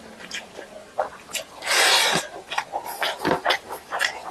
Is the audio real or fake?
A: real